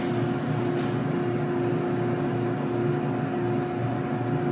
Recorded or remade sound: recorded